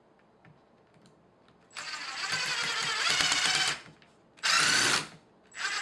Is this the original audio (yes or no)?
yes